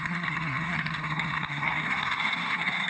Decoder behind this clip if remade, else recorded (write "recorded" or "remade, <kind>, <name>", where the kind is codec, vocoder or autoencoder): remade, codec, SNAC